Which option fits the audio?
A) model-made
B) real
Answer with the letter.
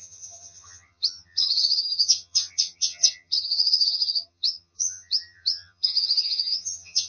A